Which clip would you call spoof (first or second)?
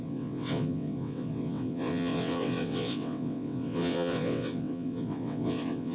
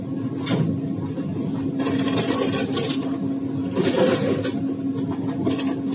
first